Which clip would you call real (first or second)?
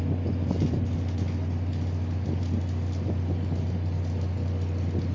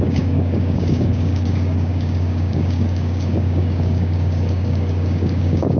first